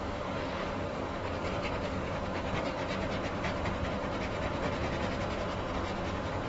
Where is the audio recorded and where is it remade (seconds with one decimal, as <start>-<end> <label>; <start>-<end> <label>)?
0.0-2.8 remade; 2.8-6.5 recorded